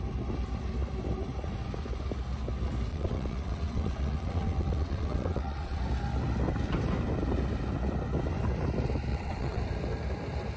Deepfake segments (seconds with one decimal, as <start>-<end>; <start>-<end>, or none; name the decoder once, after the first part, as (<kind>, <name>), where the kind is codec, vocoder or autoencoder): 2.9-5.8 (vocoder, WaveNeXt); 9.1-9.6